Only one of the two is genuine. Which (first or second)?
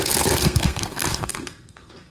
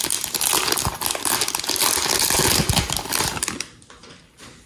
second